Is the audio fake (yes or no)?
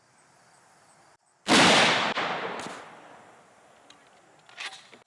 no